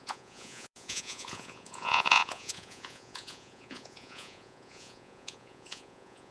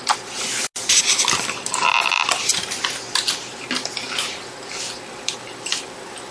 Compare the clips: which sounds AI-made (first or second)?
first